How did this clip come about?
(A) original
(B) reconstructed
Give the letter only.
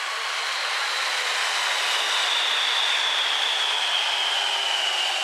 A